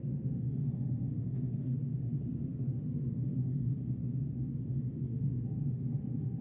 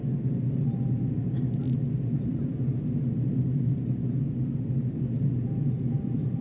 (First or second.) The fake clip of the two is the first